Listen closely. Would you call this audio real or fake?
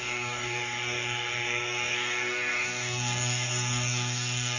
fake